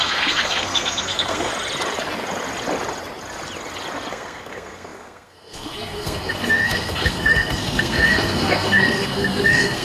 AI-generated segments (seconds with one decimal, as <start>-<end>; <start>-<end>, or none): 0.0-1.5; 4.1-9.8